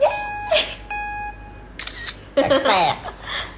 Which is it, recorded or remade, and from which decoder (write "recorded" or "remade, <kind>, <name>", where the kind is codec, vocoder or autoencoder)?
recorded